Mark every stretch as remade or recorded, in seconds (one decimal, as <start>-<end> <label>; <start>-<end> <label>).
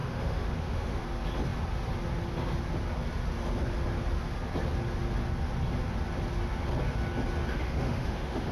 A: 0.0-1.0 remade; 1.0-7.5 recorded; 7.5-8.5 remade